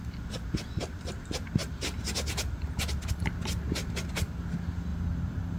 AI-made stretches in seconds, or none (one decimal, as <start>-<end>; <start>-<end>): none